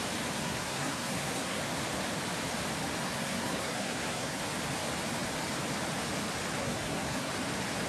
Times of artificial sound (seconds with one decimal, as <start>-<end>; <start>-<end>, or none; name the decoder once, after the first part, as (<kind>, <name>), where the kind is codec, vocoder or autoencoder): 0.4-1.6 (codec, SNAC); 3.0-4.4; 6.6-7.3